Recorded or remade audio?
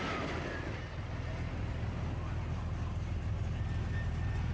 recorded